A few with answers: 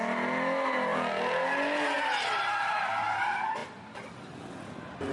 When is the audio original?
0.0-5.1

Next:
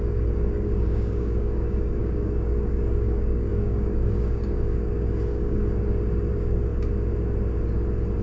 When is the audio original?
5.6-6.3; 6.7-8.2

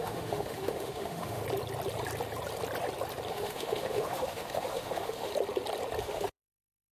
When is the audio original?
1.4-3.3; 5.3-6.0